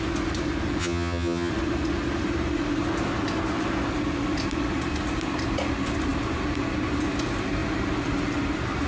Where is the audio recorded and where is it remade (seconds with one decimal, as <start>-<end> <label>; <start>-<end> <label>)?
0.0-0.8 recorded; 0.8-1.5 remade; 1.5-8.9 recorded